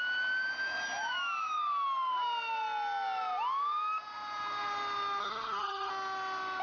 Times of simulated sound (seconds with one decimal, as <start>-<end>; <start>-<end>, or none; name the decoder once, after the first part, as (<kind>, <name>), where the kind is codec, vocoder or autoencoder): 5.2-5.9 (codec, SNAC)